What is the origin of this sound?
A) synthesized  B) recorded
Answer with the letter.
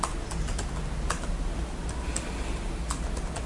B